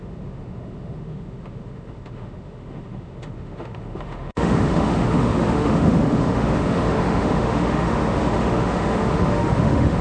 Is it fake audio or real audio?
fake